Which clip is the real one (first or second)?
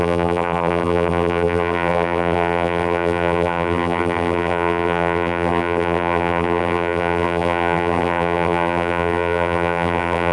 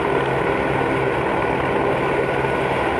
second